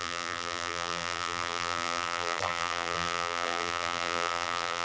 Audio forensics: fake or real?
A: fake